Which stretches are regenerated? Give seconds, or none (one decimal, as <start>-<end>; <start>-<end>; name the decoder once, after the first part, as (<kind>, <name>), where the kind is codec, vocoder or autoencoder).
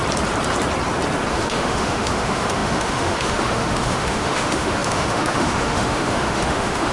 1.3-6.9 (autoencoder, DAC-VAE)